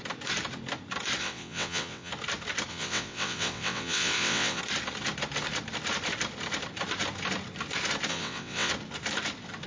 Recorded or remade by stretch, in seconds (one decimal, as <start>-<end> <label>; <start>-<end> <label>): 0.0-1.2 recorded; 1.2-2.1 remade; 2.1-2.7 recorded; 2.7-4.6 remade; 4.6-8.1 recorded; 8.1-8.7 remade; 8.7-9.7 recorded